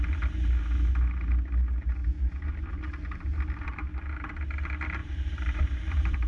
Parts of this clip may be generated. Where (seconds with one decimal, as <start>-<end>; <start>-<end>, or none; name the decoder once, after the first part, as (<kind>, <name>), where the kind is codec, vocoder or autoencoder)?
5.0-6.3 (vocoder, BigVGAN v2)